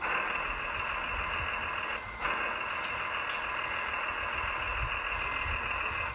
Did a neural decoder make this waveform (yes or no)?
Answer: no